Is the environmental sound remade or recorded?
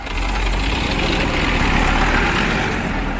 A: recorded